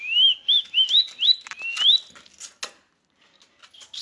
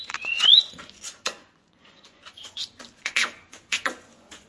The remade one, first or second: second